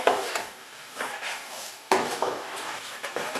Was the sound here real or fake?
fake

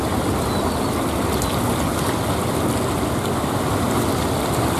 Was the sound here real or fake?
real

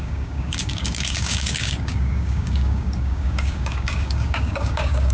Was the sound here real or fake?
fake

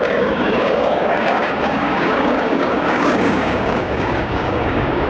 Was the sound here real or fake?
fake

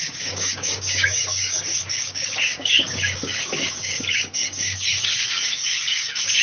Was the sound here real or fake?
fake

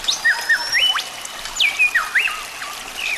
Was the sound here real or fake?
real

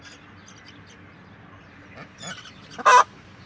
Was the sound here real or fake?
real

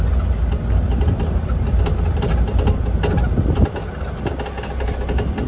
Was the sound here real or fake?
real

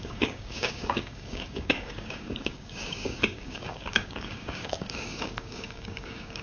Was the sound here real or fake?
fake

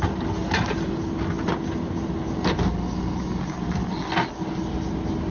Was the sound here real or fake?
real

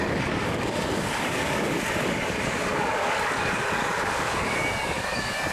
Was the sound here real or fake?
fake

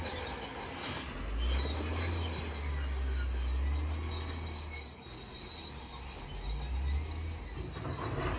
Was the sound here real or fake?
real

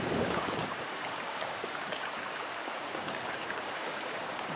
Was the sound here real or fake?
fake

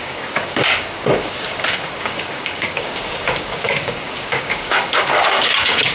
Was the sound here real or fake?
fake